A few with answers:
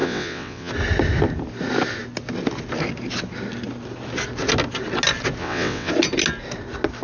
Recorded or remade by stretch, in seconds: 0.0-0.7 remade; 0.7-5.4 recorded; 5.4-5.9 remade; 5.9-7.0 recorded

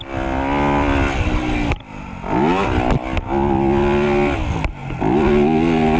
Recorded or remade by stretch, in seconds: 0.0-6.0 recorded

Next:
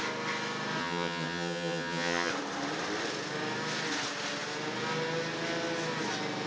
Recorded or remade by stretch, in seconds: 0.0-0.8 recorded; 0.8-2.3 remade; 2.3-6.5 recorded

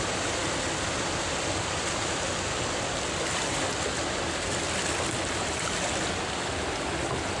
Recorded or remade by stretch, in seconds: 0.0-7.4 recorded

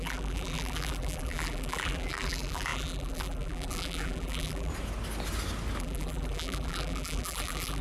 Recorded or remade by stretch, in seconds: 0.0-4.7 remade; 4.7-5.8 recorded; 5.8-7.8 remade

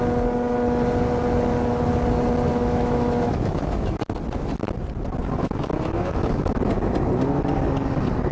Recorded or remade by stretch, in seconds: 0.0-2.5 recorded; 2.5-4.1 remade; 4.1-5.2 recorded; 5.2-6.7 remade; 6.7-8.3 recorded

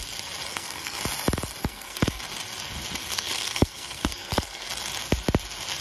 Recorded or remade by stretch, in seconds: 0.0-0.5 recorded; 0.5-1.0 remade; 1.0-1.6 recorded; 1.6-2.2 remade; 2.2-3.0 recorded; 3.0-4.7 remade; 4.7-5.8 recorded